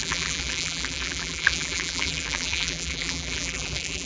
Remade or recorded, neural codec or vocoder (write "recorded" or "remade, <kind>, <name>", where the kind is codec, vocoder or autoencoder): remade, vocoder, BigVGAN v2